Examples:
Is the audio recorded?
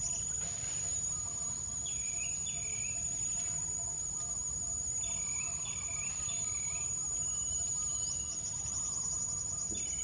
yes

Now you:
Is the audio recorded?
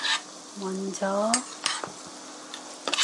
yes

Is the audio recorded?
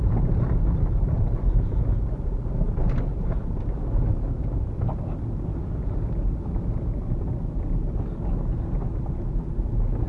yes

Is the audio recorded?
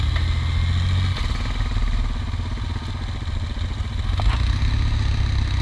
yes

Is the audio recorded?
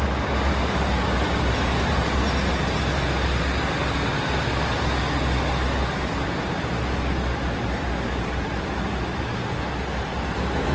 yes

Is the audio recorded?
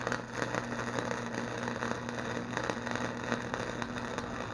yes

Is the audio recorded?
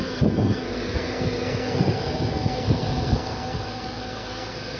no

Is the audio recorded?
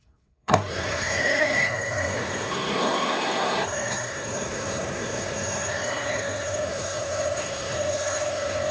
no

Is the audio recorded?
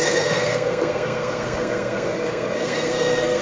no